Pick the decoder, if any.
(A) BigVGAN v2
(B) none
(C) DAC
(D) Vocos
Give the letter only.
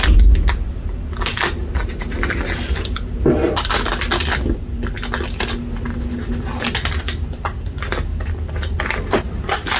B